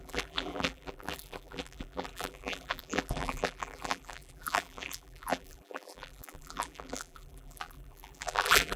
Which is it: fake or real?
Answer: fake